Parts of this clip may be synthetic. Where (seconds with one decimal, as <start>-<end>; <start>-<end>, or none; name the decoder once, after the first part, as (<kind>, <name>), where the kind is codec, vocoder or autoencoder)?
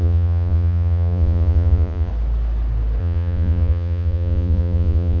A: 0.0-2.1 (vocoder, Vocos); 3.0-5.2